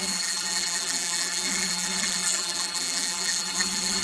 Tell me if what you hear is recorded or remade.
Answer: remade